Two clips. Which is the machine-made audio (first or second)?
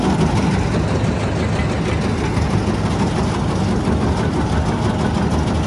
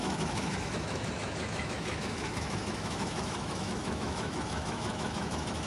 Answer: second